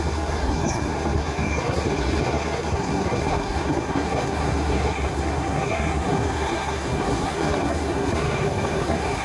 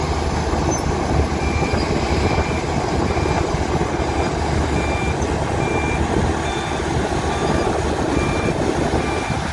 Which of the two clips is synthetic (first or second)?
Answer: first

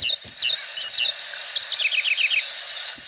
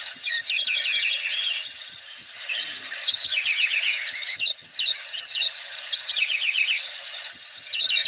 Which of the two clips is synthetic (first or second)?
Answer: second